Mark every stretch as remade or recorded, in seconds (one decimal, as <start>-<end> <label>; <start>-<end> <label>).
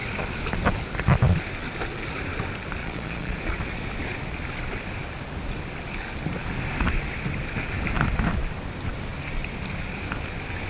0.0-2.8 recorded; 2.8-3.8 remade; 3.8-10.7 recorded